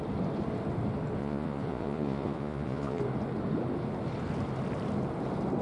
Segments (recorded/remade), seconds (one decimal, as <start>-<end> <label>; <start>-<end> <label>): 0.0-1.2 recorded; 1.2-3.0 remade; 3.0-5.6 recorded